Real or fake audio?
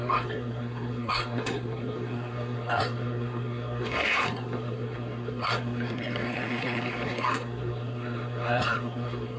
fake